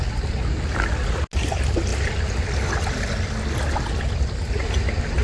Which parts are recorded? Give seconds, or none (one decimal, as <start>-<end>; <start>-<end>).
0.0-5.2

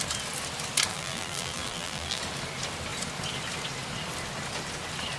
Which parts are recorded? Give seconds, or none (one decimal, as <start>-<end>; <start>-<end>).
0.0-0.9; 2.2-5.2